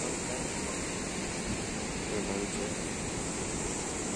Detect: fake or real real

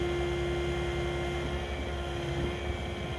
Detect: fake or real real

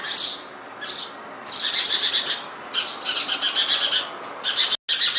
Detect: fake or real real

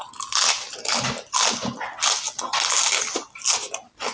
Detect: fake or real real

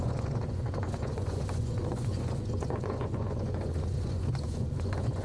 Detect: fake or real fake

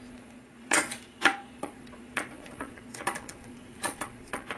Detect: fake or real fake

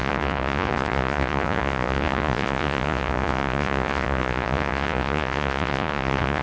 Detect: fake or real fake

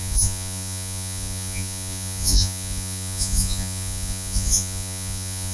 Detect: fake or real fake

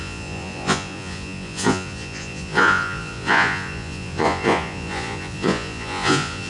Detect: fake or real fake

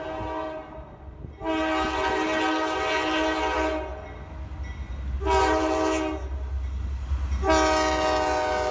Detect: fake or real real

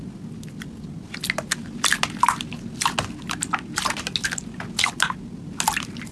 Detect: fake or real real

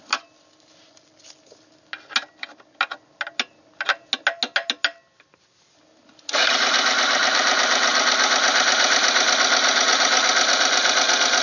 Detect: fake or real real